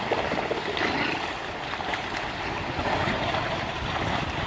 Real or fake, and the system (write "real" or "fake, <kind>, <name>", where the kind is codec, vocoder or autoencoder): real